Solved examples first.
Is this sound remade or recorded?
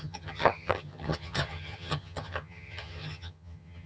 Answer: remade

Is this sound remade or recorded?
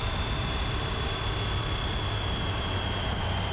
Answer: remade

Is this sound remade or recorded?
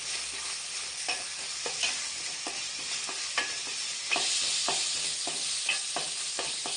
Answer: recorded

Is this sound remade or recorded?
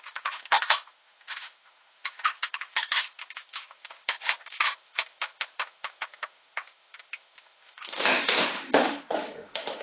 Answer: remade